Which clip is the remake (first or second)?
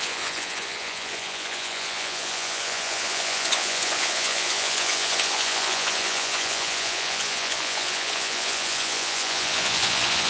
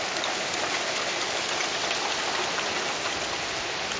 first